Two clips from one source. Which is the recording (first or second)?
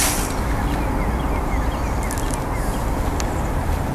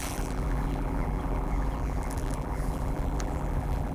first